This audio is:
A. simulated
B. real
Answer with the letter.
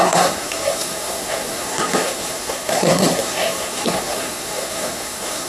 A